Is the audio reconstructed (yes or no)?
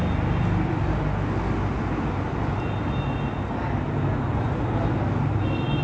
no